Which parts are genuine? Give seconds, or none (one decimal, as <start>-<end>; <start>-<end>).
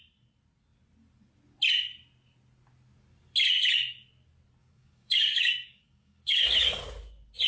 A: 0.0-4.6; 6.8-7.5